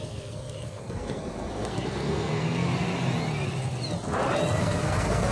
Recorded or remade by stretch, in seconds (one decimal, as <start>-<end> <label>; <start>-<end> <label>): 0.0-2.7 remade; 2.7-4.6 recorded; 4.6-5.3 remade